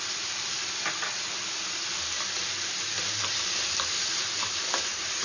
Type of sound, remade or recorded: remade